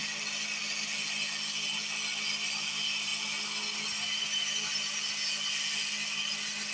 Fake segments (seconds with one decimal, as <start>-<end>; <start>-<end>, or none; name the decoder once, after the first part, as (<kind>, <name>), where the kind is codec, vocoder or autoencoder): none